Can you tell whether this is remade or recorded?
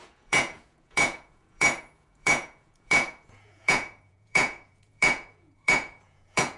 remade